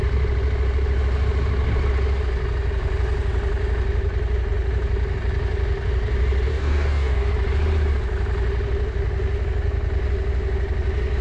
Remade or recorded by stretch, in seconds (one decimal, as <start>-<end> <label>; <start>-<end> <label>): 0.0-6.5 recorded; 6.5-7.3 remade; 7.3-11.2 recorded